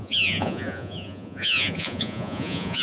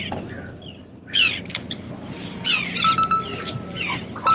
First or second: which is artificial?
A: first